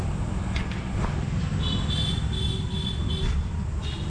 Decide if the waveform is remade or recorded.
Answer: recorded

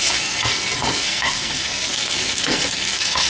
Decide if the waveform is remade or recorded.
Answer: remade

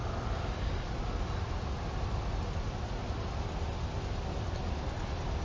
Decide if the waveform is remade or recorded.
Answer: recorded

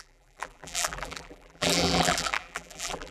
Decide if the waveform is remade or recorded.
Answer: remade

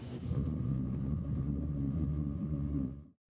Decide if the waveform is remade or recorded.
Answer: remade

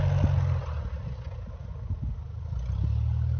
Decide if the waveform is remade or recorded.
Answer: recorded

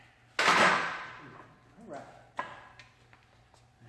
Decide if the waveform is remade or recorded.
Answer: recorded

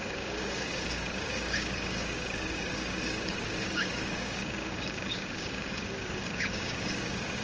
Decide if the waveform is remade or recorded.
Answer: remade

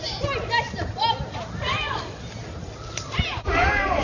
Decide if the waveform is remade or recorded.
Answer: recorded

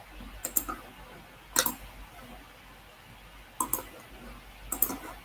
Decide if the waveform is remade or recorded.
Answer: recorded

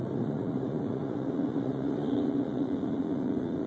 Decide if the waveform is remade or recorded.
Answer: remade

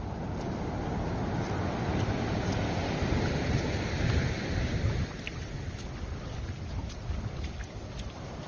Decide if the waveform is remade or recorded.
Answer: recorded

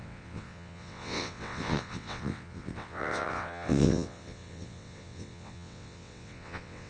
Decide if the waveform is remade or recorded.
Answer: remade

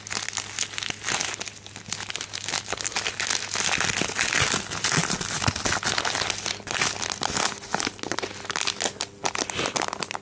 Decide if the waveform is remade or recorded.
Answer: recorded